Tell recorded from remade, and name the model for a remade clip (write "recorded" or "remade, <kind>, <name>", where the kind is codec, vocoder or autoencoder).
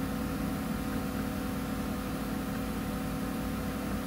recorded